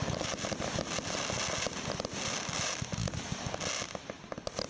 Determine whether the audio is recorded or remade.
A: recorded